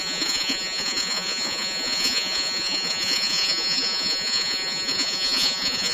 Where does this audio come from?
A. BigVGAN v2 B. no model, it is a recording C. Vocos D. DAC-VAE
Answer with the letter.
C